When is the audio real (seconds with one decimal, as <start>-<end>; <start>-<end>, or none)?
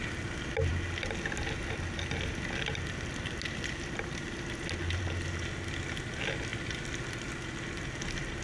0.0-8.4